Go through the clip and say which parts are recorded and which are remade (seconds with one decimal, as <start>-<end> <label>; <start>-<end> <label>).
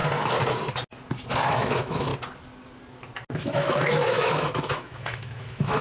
0.0-1.3 recorded; 1.3-2.1 remade; 2.1-3.3 recorded; 3.3-5.8 remade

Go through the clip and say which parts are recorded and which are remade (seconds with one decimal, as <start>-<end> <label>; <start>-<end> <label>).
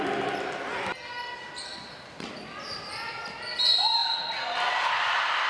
0.0-1.7 recorded; 1.7-2.4 remade; 2.4-5.5 recorded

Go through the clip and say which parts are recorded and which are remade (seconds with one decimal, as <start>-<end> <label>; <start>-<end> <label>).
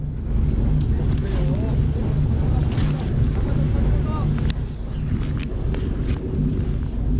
0.0-7.2 recorded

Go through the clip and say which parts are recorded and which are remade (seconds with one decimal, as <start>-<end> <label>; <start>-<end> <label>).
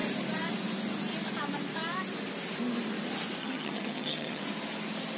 0.0-3.4 recorded; 3.4-4.4 remade; 4.4-5.2 recorded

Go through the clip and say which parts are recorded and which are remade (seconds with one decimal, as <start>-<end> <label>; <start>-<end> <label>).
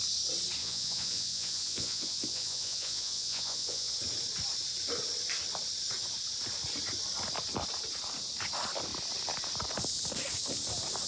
0.0-0.6 recorded; 0.6-3.9 remade; 3.9-11.1 recorded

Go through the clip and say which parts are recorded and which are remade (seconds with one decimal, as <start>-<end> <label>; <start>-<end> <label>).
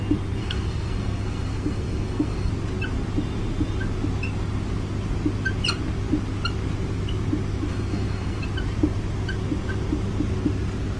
0.0-0.4 recorded; 0.4-2.5 remade; 2.5-7.7 recorded; 7.7-8.4 remade; 8.4-11.0 recorded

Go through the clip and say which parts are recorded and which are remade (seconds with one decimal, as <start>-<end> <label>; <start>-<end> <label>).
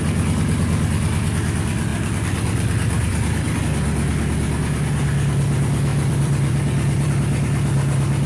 0.0-1.9 recorded; 1.9-3.6 remade; 3.6-5.9 recorded; 5.9-7.1 remade; 7.1-8.3 recorded